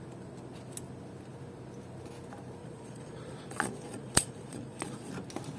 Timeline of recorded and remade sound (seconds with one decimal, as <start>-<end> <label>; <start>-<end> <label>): 0.0-2.6 recorded; 2.6-5.1 remade; 5.1-5.6 recorded